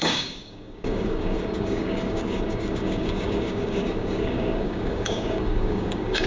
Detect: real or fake fake